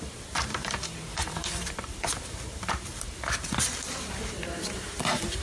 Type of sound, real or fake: fake